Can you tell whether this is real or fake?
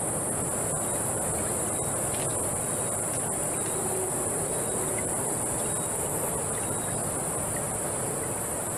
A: real